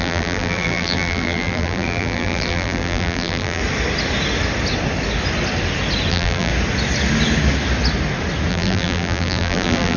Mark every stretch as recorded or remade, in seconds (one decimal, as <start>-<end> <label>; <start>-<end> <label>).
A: 0.0-3.6 remade; 3.6-6.1 recorded; 6.1-6.5 remade; 6.5-8.5 recorded; 8.5-10.0 remade